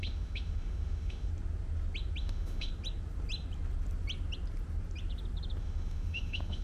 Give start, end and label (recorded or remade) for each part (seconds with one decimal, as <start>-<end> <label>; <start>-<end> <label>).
0.0-1.3 remade; 1.3-2.2 recorded; 2.2-2.7 remade; 2.7-5.6 recorded; 5.6-6.6 remade